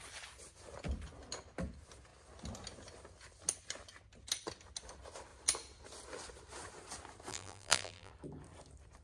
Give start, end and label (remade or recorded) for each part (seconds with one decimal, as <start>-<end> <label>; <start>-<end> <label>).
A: 0.0-7.3 recorded; 7.3-8.1 remade; 8.1-9.0 recorded